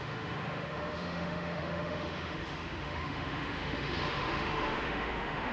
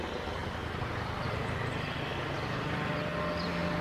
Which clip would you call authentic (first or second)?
second